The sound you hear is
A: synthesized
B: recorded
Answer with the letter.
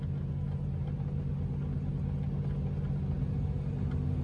B